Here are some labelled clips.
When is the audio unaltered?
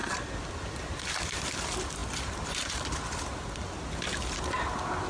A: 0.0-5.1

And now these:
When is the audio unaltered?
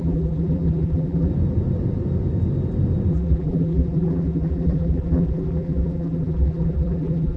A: 1.3-3.1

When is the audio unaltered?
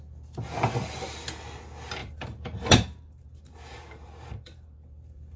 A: 0.0-2.0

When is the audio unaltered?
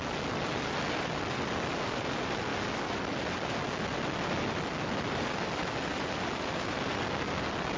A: 0.0-5.9; 6.8-7.8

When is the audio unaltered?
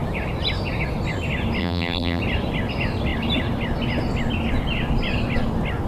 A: 0.0-1.6; 2.2-5.9